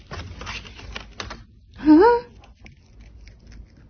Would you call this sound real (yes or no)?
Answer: yes